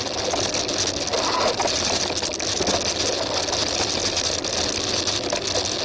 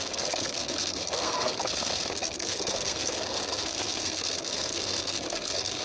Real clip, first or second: first